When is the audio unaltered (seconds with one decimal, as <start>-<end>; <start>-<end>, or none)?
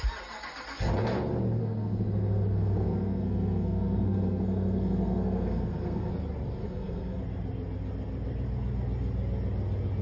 0.0-1.6; 6.1-6.6; 7.2-10.0